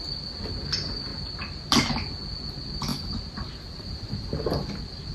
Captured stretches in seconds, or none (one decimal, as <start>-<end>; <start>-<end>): 0.0-5.1